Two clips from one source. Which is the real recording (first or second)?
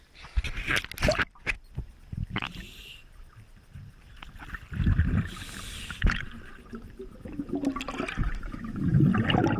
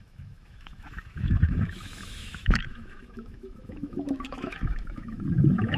first